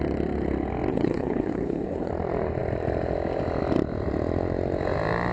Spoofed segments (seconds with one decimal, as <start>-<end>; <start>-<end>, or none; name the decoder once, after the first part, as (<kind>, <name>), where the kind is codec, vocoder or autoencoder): 0.9-2.1 (codec, HILCodec)